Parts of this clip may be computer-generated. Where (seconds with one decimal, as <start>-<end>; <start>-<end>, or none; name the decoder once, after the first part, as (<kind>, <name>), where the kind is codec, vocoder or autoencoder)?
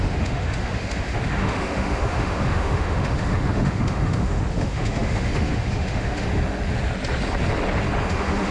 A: 0.0-6.3 (autoencoder, DAC-VAE); 8.1-8.5